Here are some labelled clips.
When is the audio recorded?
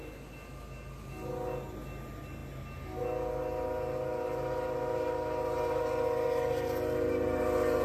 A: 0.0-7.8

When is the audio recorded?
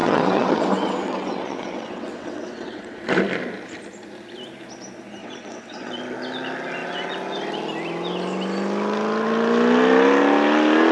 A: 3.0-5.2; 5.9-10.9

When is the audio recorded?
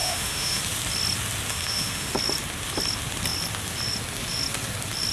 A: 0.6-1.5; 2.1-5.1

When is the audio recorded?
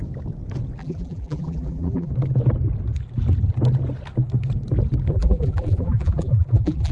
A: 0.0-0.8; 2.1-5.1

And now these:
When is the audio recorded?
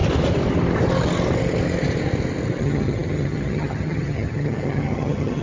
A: 0.0-2.6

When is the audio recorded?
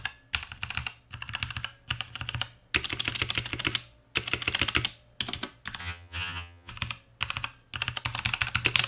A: 0.0-5.8; 6.7-8.9